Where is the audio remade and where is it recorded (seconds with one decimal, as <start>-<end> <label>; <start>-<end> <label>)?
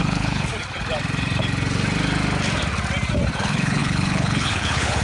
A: 0.0-0.5 remade; 0.5-3.4 recorded; 3.4-5.0 remade